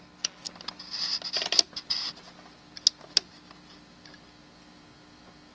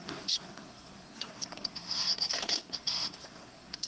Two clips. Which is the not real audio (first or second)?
second